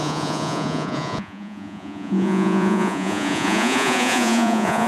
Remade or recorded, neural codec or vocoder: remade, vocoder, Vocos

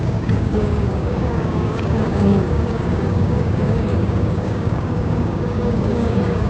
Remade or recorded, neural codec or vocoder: remade, codec, DAC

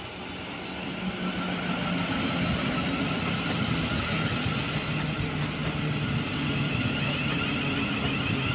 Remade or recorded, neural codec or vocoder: recorded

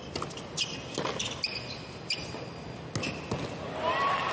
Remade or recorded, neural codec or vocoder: recorded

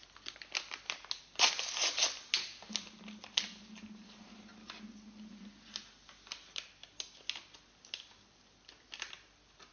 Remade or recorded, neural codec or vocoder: recorded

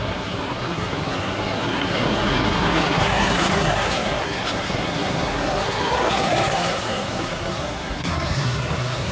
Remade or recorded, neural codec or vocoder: remade, codec, SNAC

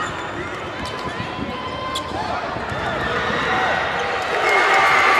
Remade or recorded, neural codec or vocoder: recorded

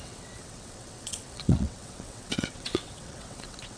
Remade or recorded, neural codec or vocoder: remade, vocoder, WaveNeXt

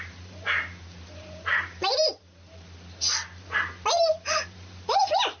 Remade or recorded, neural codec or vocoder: remade, vocoder, BigVGAN v2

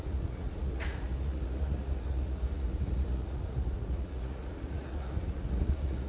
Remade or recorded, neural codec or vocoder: remade, vocoder, Vocos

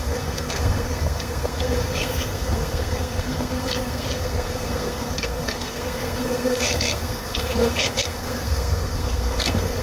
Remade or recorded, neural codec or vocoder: remade, codec, SNAC